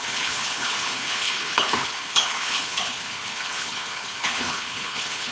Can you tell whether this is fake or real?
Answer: fake